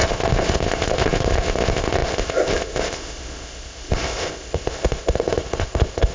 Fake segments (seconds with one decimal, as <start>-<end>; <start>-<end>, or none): 0.0-6.1